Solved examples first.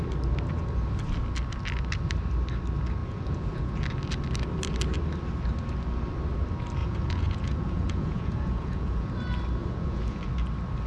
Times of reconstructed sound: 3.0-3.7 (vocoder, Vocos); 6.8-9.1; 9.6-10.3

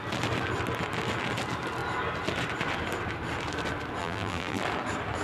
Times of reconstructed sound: 4.0-4.6 (vocoder, BigVGAN v2)